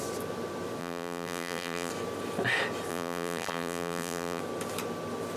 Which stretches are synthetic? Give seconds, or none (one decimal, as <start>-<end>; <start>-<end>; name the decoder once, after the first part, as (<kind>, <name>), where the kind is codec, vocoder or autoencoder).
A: 0.8-1.9 (vocoder, BigVGAN v2); 2.9-4.4